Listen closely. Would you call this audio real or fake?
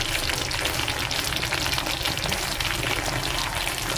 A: real